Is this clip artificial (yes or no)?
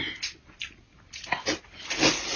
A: no